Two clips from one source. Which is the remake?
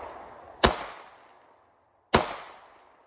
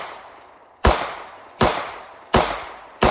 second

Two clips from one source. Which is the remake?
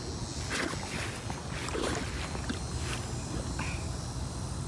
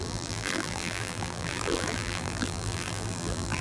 second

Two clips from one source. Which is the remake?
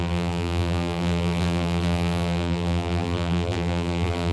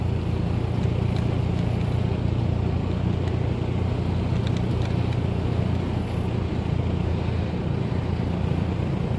first